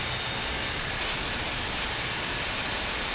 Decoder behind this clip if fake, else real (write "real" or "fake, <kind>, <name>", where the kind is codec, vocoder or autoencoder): real